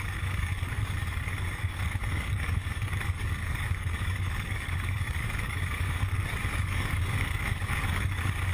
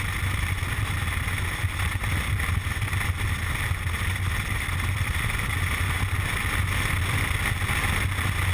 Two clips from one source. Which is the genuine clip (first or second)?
second